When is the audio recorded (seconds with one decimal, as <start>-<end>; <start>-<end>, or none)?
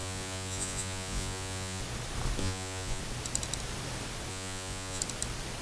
1.8-2.4; 3.0-4.3; 5.0-5.6